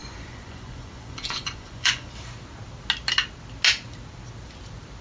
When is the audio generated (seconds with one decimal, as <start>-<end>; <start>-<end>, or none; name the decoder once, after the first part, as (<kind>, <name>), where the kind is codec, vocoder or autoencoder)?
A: 0.0-2.1 (vocoder, Vocos)